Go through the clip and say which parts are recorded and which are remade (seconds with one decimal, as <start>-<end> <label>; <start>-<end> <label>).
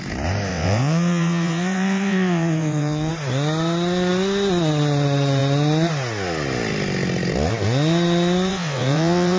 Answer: 0.0-0.5 recorded; 0.5-3.1 remade; 3.1-8.5 recorded; 8.5-9.4 remade